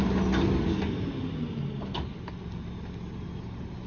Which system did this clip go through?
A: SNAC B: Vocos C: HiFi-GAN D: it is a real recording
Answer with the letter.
D